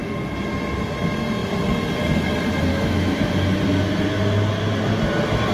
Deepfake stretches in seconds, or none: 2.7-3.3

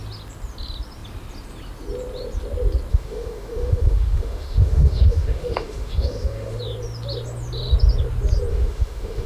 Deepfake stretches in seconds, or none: 2.9-6.6; 8.5-9.3

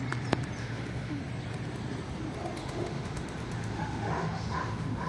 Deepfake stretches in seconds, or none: 0.6-1.2; 2.6-5.1

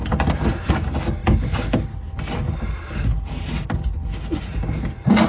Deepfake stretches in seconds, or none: none